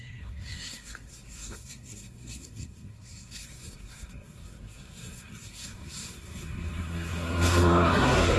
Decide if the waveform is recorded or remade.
remade